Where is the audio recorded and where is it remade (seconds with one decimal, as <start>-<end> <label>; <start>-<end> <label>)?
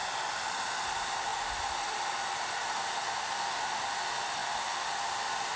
0.0-1.3 recorded; 1.3-3.9 remade; 3.9-4.4 recorded; 4.4-5.6 remade